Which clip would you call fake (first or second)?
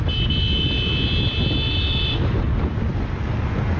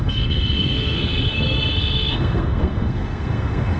second